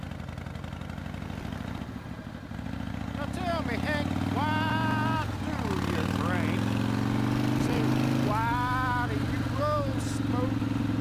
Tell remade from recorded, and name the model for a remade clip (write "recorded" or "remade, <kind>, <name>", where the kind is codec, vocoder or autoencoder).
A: recorded